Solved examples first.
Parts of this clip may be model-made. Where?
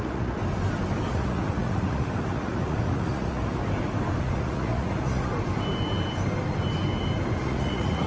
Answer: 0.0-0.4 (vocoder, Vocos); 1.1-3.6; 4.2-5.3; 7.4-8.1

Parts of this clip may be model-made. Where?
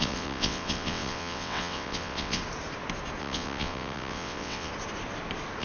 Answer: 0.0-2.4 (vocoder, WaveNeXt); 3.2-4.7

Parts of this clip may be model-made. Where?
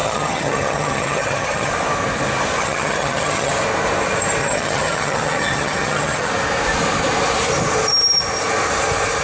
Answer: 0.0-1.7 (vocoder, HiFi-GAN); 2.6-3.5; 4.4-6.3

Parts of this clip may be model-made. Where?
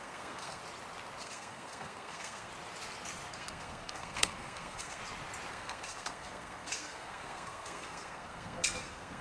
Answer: 0.0-0.6 (codec, SNAC); 1.2-2.5; 3.3-5.0; 5.5-9.2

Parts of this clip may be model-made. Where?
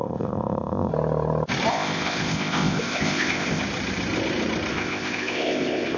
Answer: 0.0-0.9 (codec, ZipCodec); 1.7-3.6; 4.7-6.0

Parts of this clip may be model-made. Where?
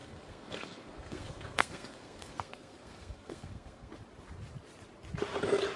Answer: 0.0-3.9 (codec, SNAC)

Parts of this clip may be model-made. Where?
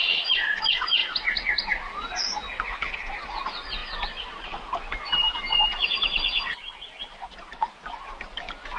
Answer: none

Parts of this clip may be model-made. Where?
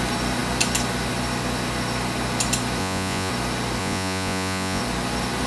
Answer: 2.8-3.3 (vocoder, Vocos); 3.8-4.8